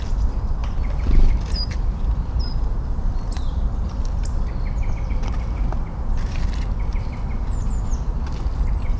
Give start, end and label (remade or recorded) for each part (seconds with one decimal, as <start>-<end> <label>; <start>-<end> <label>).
0.0-9.0 recorded